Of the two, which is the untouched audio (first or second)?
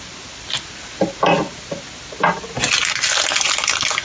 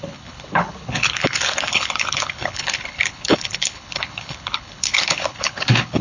first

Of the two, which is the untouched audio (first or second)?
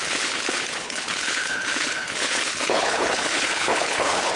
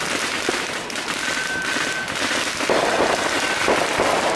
second